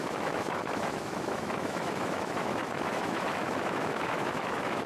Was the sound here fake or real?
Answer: fake